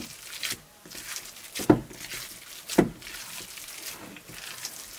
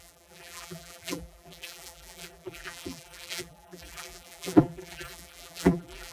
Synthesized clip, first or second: second